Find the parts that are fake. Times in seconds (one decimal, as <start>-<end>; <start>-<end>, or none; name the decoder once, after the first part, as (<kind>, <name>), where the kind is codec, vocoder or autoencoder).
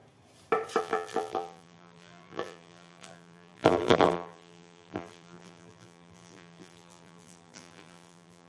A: 0.8-8.5 (vocoder, BigVGAN v2)